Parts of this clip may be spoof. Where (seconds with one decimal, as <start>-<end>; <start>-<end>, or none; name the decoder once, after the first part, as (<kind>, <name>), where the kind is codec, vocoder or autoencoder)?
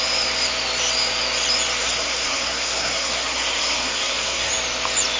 1.8-4.5 (codec, SNAC)